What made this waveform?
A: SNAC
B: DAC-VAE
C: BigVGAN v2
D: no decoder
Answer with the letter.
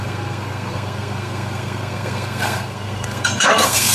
A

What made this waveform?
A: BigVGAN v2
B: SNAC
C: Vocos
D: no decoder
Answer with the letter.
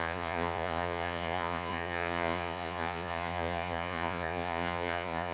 C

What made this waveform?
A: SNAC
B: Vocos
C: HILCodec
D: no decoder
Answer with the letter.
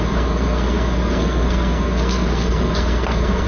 A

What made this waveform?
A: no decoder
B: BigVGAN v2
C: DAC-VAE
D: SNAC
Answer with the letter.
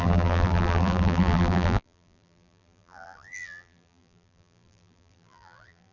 B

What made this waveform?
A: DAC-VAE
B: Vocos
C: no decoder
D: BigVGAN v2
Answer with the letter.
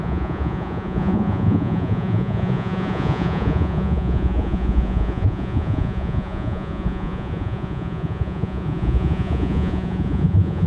B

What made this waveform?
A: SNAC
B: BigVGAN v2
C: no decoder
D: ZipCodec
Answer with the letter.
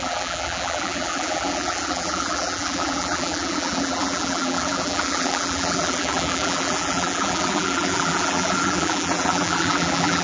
B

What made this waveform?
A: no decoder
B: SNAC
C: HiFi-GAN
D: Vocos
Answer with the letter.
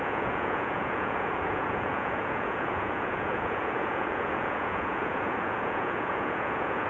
D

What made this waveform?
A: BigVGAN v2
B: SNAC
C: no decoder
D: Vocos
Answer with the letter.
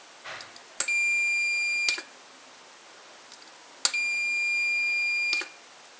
C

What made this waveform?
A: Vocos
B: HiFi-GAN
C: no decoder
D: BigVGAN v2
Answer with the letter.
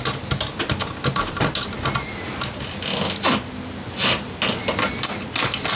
C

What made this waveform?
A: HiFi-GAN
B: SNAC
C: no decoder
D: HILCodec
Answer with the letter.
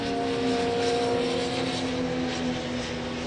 C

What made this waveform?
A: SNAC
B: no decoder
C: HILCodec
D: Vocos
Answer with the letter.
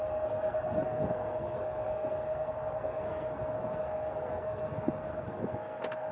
A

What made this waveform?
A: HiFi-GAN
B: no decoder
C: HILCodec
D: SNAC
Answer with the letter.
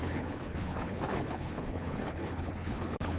C